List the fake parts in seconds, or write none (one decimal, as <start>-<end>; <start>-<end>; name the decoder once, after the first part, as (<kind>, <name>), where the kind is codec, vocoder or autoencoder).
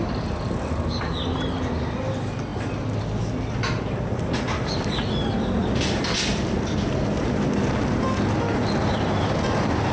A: none